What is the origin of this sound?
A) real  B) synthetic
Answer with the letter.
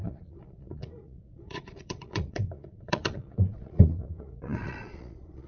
B